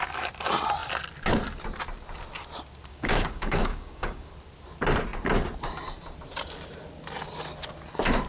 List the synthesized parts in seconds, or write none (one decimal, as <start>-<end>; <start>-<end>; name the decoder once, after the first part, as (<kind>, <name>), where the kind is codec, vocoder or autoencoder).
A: 2.9-4.3 (codec, DAC)

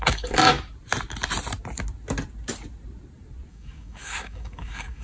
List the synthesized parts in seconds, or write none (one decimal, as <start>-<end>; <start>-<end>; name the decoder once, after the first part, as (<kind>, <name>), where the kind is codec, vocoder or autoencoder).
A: 0.0-0.5 (codec, DAC); 3.5-5.0

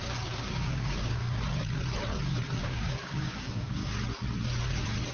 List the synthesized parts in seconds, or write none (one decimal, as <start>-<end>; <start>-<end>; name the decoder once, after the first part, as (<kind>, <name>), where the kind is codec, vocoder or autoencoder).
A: 0.0-1.2 (codec, DAC); 2.6-3.8

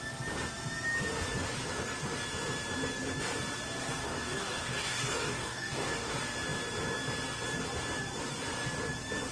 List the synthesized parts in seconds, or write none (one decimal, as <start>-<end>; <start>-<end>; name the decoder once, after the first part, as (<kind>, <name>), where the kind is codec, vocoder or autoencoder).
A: 3.8-6.1 (codec, DAC)

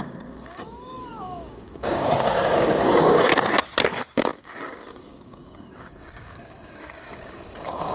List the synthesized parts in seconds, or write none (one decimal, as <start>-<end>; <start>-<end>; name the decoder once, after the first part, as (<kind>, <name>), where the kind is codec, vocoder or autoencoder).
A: 0.0-3.3 (codec, DAC); 3.9-7.9

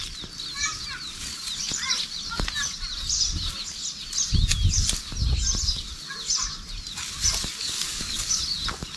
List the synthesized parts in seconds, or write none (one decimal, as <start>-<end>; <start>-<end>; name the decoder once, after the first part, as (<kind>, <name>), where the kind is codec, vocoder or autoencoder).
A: 7.6-8.3 (codec, DAC)